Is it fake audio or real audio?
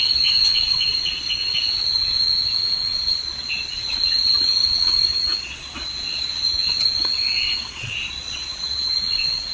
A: fake